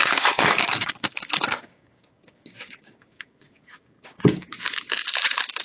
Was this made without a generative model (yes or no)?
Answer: no